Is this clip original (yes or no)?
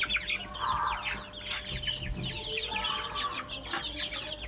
yes